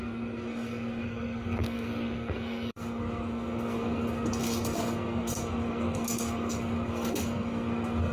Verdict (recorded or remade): remade